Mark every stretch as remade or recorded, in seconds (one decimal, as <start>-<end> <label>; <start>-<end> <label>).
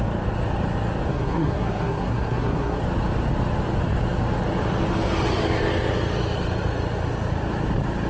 0.0-1.1 recorded; 1.1-2.8 remade; 2.8-8.1 recorded